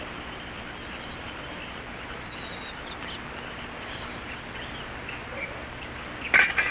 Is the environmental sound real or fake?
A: real